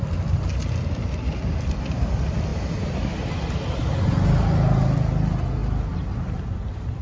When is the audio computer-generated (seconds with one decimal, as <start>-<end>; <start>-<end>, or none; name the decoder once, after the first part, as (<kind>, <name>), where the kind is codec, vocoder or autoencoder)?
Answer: none